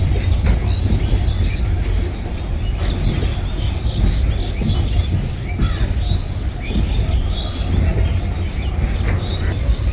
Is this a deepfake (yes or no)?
no